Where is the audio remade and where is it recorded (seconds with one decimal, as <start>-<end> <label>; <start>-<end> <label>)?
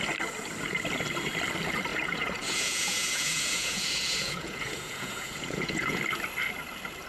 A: 0.0-1.9 recorded; 1.9-6.0 remade; 6.0-7.1 recorded